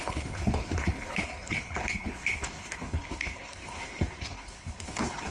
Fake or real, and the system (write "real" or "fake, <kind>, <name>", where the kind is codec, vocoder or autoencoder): fake, codec, HILCodec